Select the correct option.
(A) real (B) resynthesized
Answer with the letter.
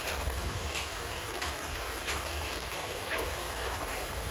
B